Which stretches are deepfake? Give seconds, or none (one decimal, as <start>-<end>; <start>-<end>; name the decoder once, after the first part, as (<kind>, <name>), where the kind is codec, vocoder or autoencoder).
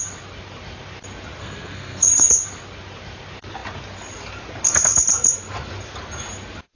1.4-2.3 (codec, SNAC)